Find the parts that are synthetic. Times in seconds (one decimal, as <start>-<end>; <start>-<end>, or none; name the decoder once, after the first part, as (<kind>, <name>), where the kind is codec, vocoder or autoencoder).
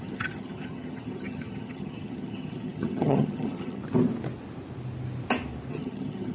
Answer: 0.0-3.8 (vocoder, HiFi-GAN); 5.7-6.3